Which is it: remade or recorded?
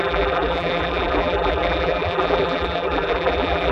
remade